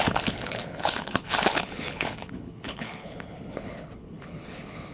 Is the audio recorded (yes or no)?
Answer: no